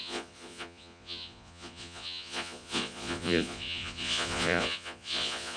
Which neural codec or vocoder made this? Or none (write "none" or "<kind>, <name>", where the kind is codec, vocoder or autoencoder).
vocoder, Vocos